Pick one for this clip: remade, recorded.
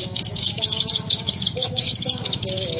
remade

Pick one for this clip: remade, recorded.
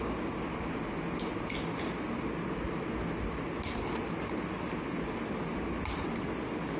recorded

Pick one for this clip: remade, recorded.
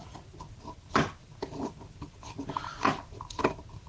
recorded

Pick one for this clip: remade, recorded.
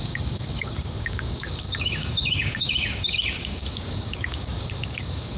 remade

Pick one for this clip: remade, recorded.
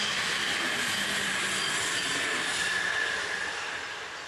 recorded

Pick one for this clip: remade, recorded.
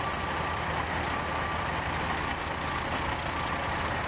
recorded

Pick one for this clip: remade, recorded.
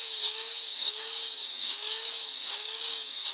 remade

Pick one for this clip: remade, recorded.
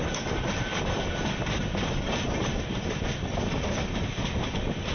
recorded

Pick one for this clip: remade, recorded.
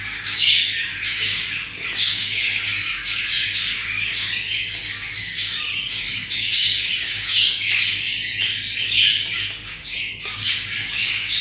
remade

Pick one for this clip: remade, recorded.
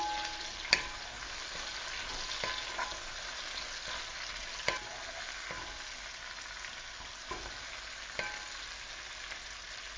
recorded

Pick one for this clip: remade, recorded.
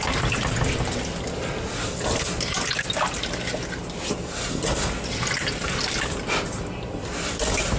recorded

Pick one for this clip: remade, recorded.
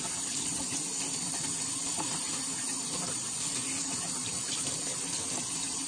recorded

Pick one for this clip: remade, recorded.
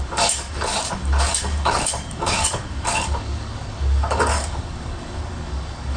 remade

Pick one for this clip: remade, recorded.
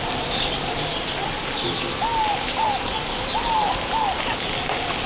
recorded